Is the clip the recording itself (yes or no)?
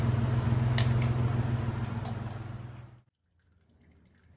yes